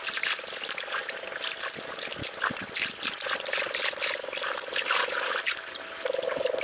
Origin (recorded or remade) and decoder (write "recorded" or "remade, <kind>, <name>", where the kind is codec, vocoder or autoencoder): recorded